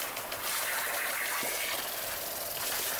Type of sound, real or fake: real